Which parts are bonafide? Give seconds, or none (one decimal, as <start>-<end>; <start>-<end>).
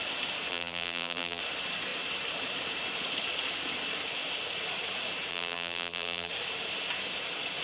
0.0-0.5; 1.4-5.3; 6.3-7.6